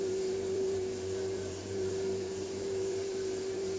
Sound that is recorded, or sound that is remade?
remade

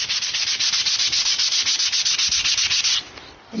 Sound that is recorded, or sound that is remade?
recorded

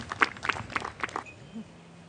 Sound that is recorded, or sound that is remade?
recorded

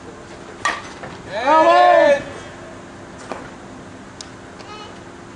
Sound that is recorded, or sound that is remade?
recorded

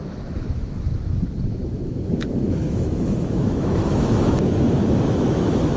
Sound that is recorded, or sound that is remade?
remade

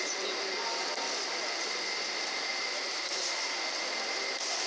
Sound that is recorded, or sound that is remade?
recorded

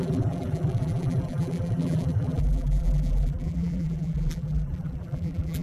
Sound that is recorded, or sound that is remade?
remade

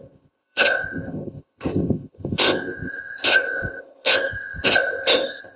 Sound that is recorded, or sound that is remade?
remade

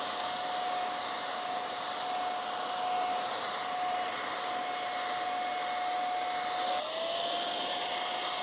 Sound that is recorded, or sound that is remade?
recorded